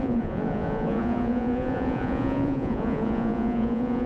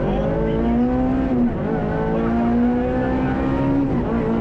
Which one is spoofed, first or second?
first